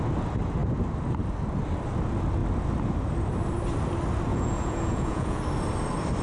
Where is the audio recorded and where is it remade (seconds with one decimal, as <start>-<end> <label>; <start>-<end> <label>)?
0.0-4.3 recorded; 4.3-5.4 remade; 5.4-6.2 recorded